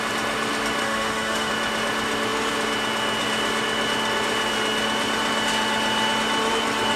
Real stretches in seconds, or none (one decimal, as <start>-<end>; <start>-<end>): 0.0-0.8; 1.5-7.0